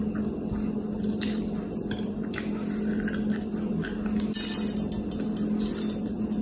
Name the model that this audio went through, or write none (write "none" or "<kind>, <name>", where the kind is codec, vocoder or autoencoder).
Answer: none